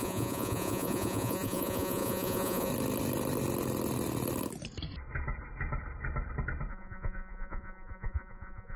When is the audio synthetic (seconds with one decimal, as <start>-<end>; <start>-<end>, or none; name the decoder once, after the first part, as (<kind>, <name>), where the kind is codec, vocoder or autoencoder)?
0.0-2.7 (vocoder, Vocos); 6.7-8.8